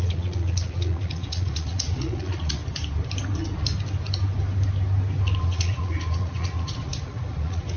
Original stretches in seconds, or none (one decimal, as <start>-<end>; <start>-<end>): 2.6-5.4